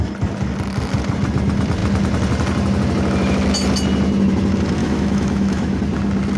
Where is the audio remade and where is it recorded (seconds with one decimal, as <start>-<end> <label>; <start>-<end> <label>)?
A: 0.0-4.8 recorded; 4.8-5.8 remade; 5.8-6.4 recorded